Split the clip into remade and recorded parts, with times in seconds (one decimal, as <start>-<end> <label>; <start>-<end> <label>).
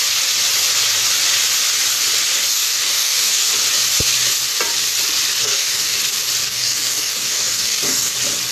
0.0-2.5 recorded; 2.5-3.5 remade; 3.5-5.4 recorded; 5.4-6.0 remade; 6.0-6.4 recorded; 6.4-8.1 remade; 8.1-8.5 recorded